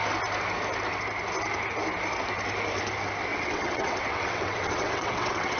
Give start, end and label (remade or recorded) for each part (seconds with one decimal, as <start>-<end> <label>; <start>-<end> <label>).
0.0-3.3 recorded; 3.3-5.6 remade